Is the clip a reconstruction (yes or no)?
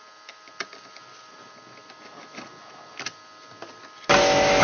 no